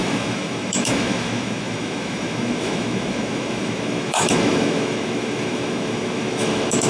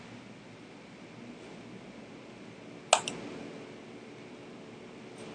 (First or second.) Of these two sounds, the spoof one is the first